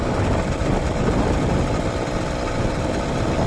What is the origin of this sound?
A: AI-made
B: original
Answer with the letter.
B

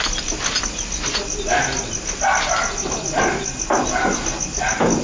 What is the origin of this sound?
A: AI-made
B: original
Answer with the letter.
B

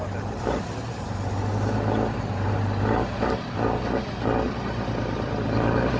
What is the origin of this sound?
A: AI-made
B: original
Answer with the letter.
B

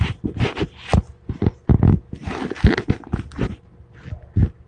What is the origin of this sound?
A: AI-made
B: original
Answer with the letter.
B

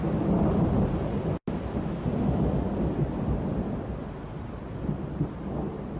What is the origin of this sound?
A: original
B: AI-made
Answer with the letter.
A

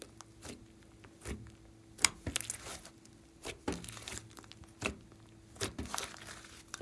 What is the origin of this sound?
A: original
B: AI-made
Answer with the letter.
A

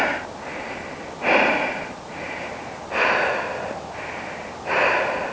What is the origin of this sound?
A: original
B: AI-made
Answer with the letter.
A